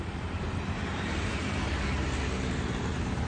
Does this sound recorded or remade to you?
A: remade